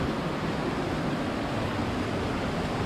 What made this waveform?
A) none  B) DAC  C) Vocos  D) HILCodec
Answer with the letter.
A